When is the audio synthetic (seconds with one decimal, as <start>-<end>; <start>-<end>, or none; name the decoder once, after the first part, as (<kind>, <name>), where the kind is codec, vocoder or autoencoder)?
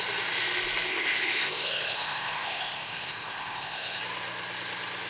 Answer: 0.9-4.0 (codec, ZipCodec)